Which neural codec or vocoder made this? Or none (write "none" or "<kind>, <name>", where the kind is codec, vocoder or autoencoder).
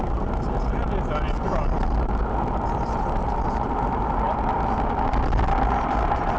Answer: none